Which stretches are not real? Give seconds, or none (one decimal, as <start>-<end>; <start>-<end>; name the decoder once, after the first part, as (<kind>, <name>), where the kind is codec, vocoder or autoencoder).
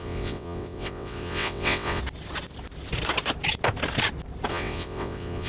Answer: 0.0-2.0 (vocoder, WaveNeXt); 4.5-5.5